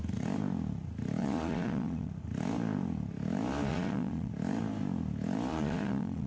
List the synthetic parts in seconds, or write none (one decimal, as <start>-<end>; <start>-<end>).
1.2-2.1; 3.7-4.3; 5.5-6.3